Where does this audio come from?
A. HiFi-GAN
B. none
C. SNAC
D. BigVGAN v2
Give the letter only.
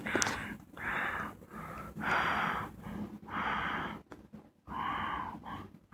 B